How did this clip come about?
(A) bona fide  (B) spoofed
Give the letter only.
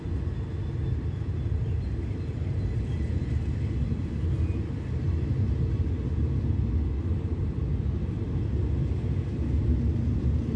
A